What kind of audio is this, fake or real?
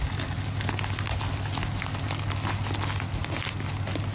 real